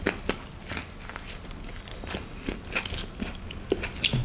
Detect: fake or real real